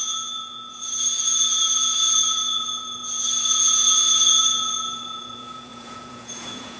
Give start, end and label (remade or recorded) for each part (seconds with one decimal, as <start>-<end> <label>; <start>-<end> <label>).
0.0-6.8 remade